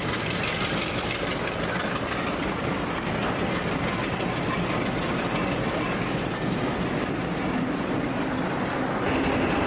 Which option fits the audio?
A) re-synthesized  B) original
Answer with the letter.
B